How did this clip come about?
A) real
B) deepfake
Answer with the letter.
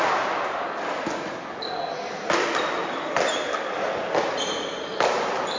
A